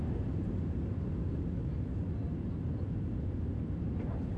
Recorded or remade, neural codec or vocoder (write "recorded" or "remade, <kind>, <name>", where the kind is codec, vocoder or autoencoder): recorded